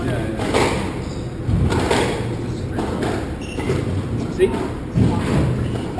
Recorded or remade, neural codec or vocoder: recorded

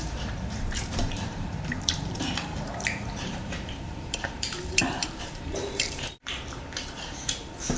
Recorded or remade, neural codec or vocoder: remade, vocoder, BigVGAN v2